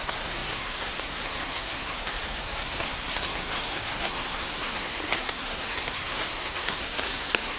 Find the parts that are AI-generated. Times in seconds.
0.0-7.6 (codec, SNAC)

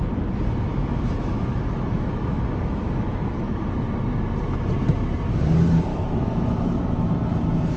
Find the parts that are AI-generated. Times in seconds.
0.7-3.6 (autoencoder, DAC-VAE); 5.9-7.1